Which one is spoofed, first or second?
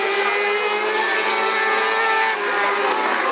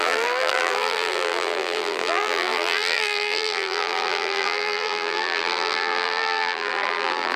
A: second